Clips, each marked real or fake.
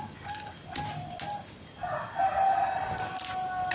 real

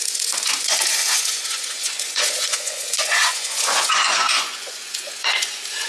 fake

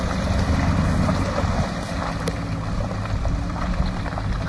real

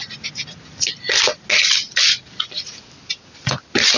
real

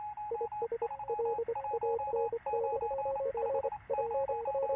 real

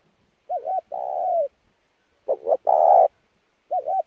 real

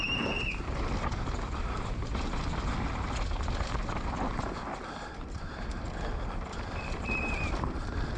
real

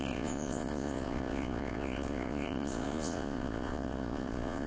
fake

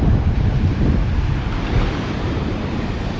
real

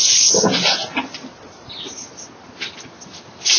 real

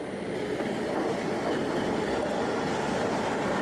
real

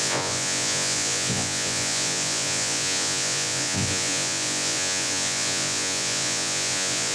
fake